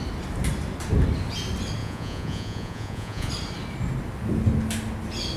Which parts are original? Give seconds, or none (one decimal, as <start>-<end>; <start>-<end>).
0.0-1.8; 3.3-5.4